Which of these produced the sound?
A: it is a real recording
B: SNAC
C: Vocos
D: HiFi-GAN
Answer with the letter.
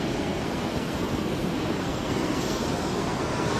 B